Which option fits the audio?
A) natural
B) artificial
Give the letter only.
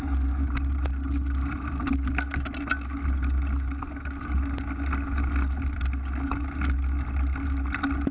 A